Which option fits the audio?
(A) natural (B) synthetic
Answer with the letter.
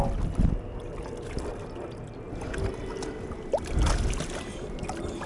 A